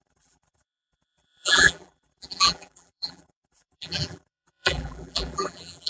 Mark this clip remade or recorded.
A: remade